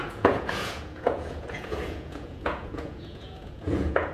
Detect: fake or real fake